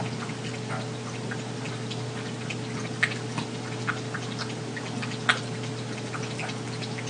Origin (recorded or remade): recorded